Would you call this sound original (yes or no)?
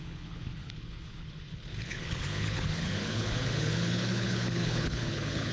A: no